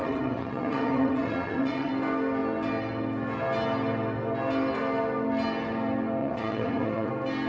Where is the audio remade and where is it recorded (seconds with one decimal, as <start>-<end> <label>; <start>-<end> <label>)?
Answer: 0.0-1.9 remade; 1.9-6.2 recorded; 6.2-7.1 remade; 7.1-7.5 recorded